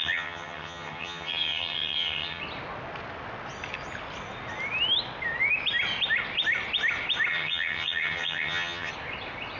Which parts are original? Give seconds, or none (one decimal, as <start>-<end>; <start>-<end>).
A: 2.4-7.3; 8.9-9.6